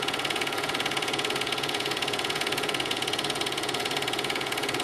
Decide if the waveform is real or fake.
fake